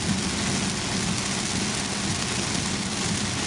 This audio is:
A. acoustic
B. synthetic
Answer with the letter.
A